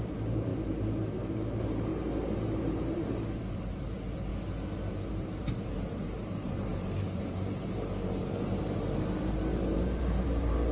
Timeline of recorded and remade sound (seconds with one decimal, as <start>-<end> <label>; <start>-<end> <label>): 0.0-0.5 remade; 0.5-1.3 recorded; 1.3-1.9 remade; 1.9-2.8 recorded; 2.8-4.3 remade; 4.3-4.9 recorded; 4.9-10.7 remade